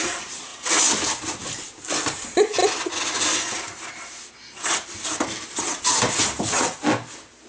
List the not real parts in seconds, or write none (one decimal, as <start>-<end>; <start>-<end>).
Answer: none

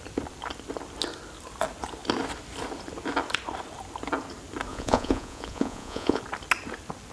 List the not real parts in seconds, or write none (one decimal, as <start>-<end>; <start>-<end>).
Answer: 4.7-6.2

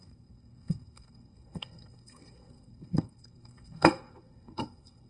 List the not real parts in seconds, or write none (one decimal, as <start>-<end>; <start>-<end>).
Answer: 0.0-5.1

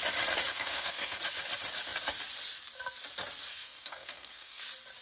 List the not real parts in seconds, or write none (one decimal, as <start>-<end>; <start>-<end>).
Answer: 0.5-1.2; 3.5-4.6

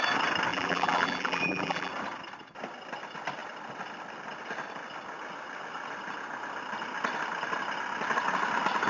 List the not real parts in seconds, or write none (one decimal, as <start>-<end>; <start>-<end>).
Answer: 0.5-1.9

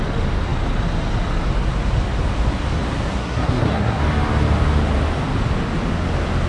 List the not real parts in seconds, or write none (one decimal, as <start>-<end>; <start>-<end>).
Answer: 3.2-4.0

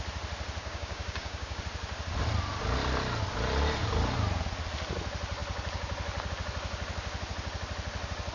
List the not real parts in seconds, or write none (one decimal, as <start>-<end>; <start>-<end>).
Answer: 0.6-1.6

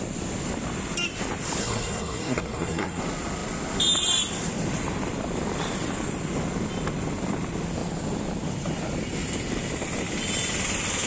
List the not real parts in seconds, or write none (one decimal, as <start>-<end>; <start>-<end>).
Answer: 1.6-3.0